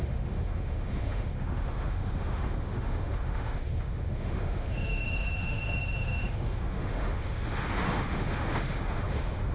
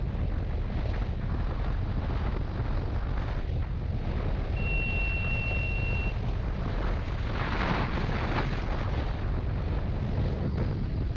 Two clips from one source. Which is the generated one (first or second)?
first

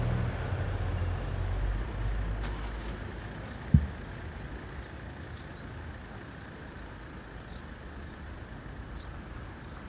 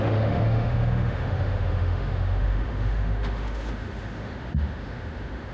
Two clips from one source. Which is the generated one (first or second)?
second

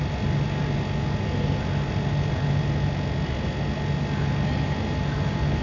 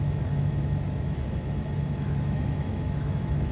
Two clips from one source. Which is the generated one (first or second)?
second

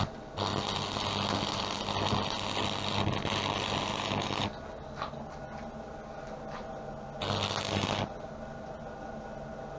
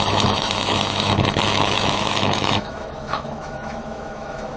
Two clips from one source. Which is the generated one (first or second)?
second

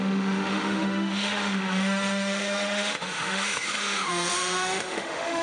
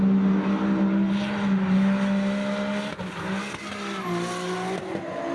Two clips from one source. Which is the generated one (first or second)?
first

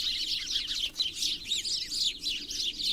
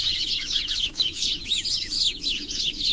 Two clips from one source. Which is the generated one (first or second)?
second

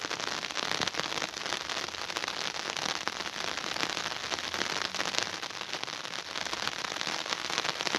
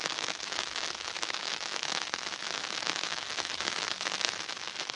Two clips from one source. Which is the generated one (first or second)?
second